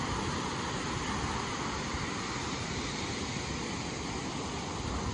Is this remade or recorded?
recorded